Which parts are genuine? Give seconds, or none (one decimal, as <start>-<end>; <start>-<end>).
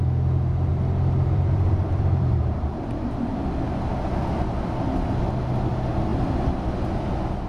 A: 0.0-0.7; 5.2-6.1; 6.8-7.5